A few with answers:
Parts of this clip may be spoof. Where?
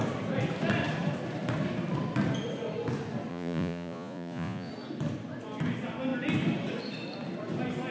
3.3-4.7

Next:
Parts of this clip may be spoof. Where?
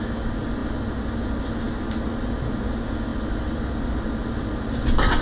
none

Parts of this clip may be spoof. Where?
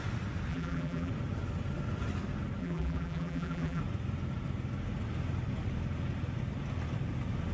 0.5-1.1; 2.6-3.8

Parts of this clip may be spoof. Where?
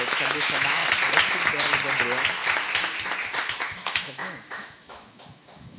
0.0-0.8; 3.6-5.8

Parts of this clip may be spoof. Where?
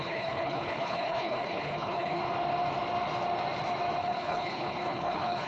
0.0-2.2; 4.0-5.5